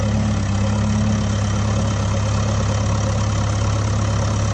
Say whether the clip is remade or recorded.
recorded